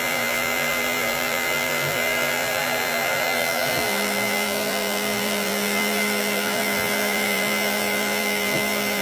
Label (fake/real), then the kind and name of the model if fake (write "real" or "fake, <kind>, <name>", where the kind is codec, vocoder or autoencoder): fake, vocoder, BigVGAN v2